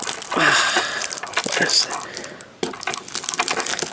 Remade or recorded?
recorded